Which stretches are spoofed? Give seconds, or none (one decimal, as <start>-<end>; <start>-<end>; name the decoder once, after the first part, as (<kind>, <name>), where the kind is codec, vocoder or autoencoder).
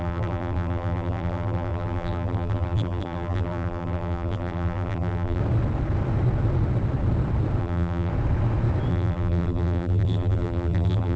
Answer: 0.0-5.4 (vocoder, BigVGAN v2); 7.6-8.1; 8.9-11.2